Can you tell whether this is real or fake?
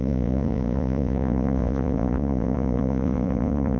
fake